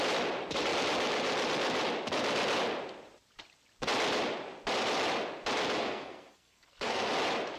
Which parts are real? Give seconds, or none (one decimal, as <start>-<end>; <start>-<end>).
0.0-5.8; 7.1-7.6